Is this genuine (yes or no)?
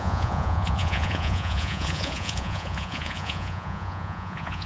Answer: no